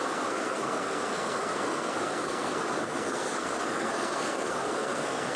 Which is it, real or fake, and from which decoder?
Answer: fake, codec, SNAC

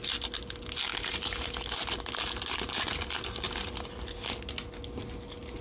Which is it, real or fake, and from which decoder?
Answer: real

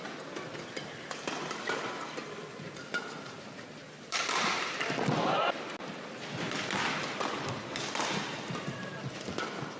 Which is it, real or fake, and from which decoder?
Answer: real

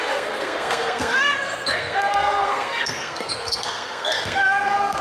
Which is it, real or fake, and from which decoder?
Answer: fake, codec, SNAC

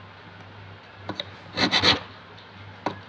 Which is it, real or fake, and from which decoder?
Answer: real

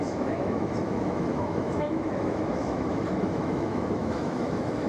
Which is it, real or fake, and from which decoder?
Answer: fake, autoencoder, DAC-VAE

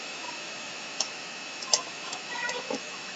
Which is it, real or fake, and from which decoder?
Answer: fake, autoencoder, DAC-VAE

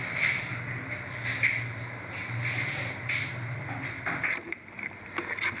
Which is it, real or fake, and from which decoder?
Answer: real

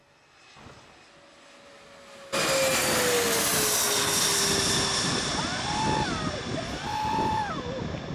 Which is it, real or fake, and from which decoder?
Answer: real